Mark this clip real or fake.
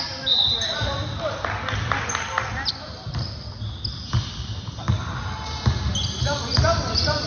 real